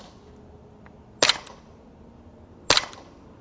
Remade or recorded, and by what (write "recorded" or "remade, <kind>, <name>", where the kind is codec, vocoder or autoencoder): recorded